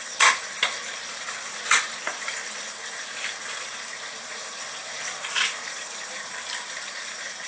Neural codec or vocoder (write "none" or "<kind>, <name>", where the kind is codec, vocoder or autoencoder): vocoder, BigVGAN v2